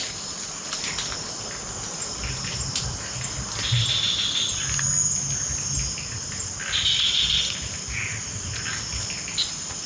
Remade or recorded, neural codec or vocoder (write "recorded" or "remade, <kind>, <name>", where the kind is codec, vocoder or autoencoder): recorded